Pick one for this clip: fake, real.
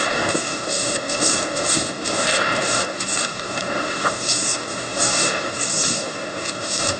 fake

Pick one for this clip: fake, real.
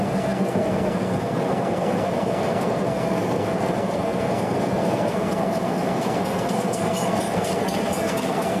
fake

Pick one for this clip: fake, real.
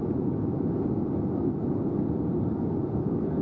real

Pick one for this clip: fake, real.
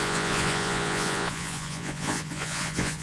fake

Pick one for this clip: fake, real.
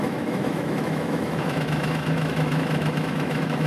fake